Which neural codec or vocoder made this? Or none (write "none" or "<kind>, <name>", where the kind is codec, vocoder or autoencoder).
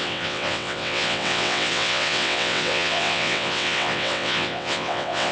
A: vocoder, WaveNeXt